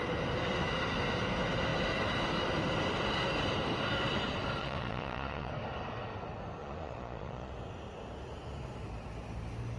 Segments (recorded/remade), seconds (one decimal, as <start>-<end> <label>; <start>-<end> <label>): 0.0-4.6 recorded; 4.6-5.5 remade; 5.5-6.6 recorded; 6.6-7.5 remade; 7.5-9.8 recorded